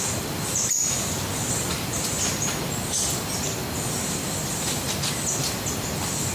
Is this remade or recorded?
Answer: recorded